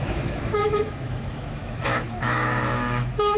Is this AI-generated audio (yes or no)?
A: yes